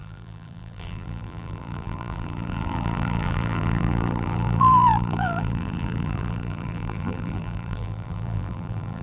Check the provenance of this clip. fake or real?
fake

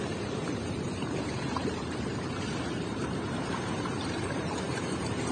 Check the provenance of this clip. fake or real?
fake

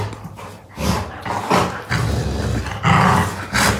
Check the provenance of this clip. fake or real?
real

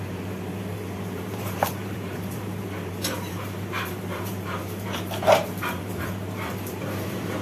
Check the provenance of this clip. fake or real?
fake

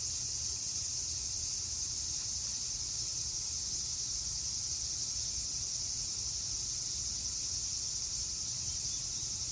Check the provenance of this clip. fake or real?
fake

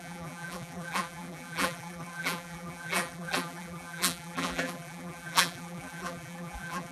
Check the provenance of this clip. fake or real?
fake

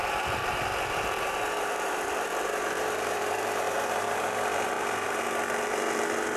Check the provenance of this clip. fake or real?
fake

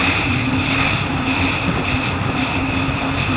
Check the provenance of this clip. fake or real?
real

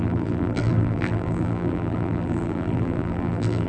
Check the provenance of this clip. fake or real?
fake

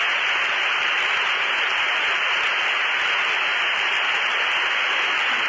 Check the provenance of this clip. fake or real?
real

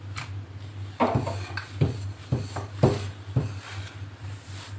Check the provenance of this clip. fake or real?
fake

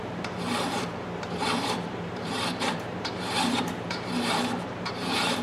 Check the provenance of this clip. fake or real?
fake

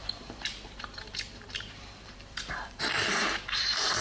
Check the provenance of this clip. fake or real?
fake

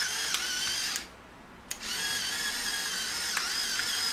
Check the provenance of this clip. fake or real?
real